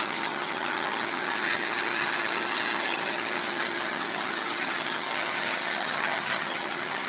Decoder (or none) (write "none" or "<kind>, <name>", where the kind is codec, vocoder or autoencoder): vocoder, HiFi-GAN